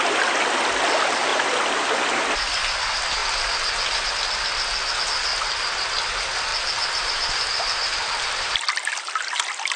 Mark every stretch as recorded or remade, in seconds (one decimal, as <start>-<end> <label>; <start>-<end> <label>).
0.0-1.3 recorded; 1.3-1.9 remade; 1.9-3.2 recorded; 3.2-4.1 remade; 4.1-6.5 recorded; 6.5-9.1 remade; 9.1-9.8 recorded